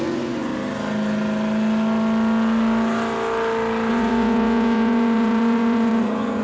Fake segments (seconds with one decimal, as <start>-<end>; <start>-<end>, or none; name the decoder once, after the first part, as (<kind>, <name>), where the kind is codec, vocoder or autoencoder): 0.0-0.5 (vocoder, Vocos); 3.9-6.4